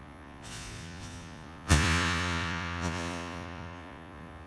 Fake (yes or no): yes